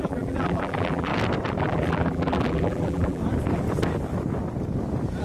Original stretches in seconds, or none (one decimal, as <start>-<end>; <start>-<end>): 1.1-1.6; 3.2-5.2